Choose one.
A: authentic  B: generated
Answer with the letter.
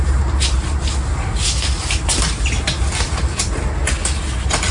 A